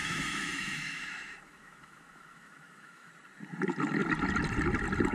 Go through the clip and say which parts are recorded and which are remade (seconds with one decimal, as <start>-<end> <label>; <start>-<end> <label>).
0.0-3.1 remade; 3.1-5.1 recorded